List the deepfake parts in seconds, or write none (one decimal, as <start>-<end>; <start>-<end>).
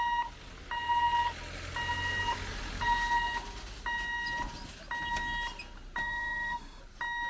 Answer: 6.0-6.8